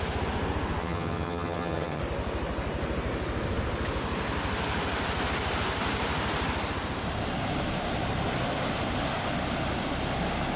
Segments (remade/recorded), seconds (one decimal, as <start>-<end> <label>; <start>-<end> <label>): 0.0-0.8 recorded; 0.8-2.0 remade; 2.0-10.6 recorded